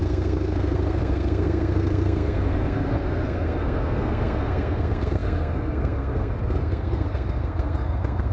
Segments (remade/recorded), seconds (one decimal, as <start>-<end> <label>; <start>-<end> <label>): 0.0-8.3 remade